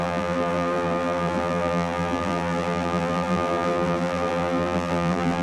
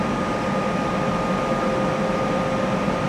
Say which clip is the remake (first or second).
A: first